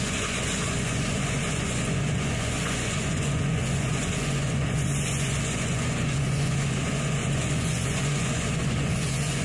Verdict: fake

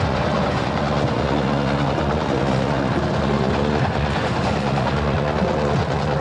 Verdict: fake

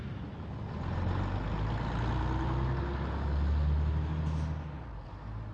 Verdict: real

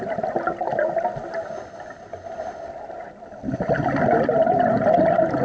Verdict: real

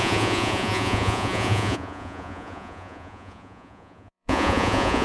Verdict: fake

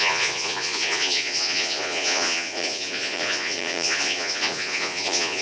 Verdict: fake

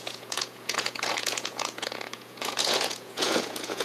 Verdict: fake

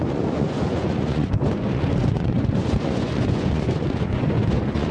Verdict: fake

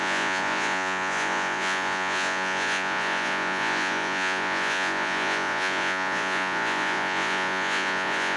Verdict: fake